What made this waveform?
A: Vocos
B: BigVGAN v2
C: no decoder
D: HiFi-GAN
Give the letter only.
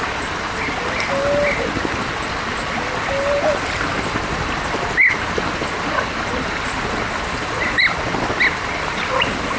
C